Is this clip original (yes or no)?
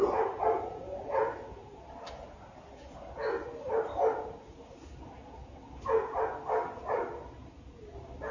yes